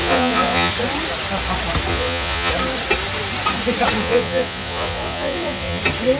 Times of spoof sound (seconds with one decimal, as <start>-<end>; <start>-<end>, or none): 0.0-0.7; 1.9-2.5; 4.0-5.8